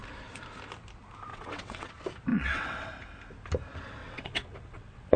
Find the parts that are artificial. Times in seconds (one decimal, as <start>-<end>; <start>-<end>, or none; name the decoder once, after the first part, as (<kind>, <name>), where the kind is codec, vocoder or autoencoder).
1.3-1.9 (vocoder, WaveNeXt); 2.3-2.9; 4.0-5.2